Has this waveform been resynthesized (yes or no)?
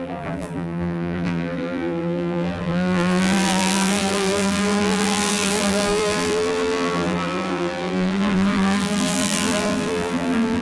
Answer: yes